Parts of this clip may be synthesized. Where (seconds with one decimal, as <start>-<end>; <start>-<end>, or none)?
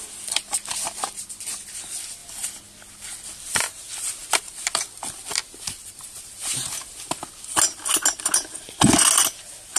none